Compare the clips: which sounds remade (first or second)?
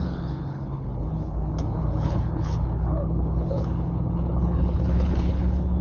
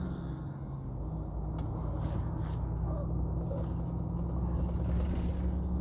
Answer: first